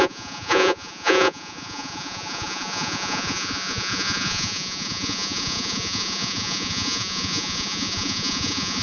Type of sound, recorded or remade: remade